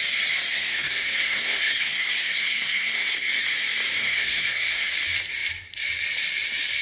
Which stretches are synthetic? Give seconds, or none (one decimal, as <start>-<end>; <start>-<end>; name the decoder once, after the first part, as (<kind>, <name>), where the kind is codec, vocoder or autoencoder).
0.5-3.3 (codec, SNAC); 4.0-4.9